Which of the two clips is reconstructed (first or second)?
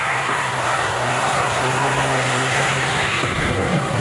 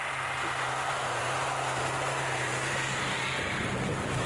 first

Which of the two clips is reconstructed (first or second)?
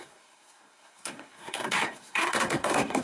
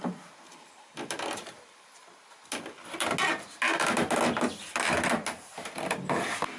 first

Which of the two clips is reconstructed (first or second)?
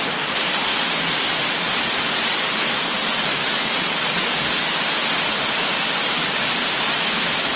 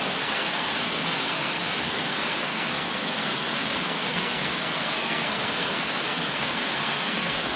second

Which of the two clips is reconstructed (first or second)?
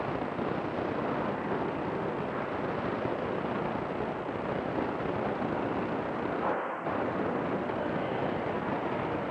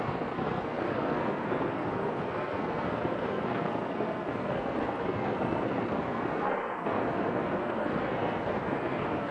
second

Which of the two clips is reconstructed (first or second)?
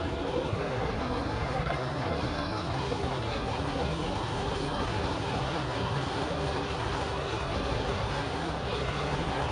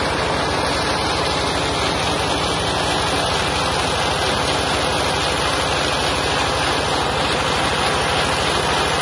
first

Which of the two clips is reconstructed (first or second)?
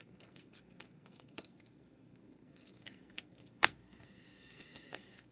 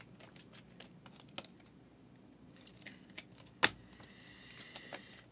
first